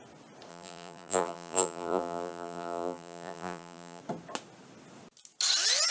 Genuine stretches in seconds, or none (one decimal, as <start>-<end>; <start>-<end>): 0.0-0.5; 4.0-5.9